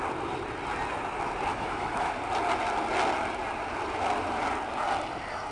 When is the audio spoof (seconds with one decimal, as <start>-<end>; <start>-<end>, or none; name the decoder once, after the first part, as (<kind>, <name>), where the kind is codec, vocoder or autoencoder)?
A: 1.5-2.1 (autoencoder, DAC-VAE)